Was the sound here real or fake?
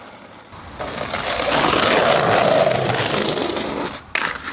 real